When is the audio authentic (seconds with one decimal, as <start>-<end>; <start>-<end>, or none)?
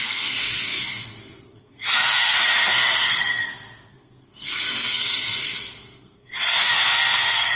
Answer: 3.4-3.9